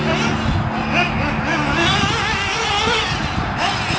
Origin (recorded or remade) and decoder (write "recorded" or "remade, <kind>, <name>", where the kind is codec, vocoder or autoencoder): recorded